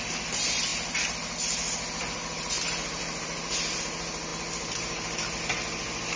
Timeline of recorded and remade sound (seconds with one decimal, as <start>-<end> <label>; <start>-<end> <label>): 0.0-3.0 recorded; 3.0-3.8 remade; 3.8-6.2 recorded